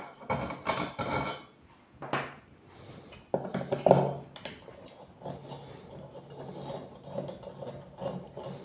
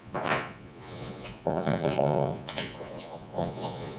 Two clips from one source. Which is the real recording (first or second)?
first